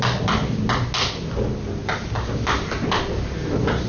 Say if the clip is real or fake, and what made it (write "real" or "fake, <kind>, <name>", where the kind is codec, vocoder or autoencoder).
real